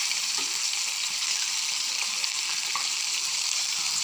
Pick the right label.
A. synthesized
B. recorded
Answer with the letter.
A